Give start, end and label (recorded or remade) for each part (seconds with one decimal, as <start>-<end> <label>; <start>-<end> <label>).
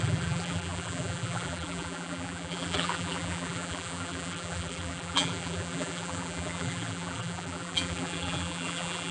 0.0-9.1 remade